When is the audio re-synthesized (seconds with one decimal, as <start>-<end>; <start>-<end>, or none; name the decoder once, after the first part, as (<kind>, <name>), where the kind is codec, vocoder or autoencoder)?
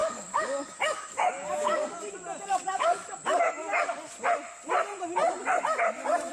0.0-2.1 (codec, DAC); 2.6-4.1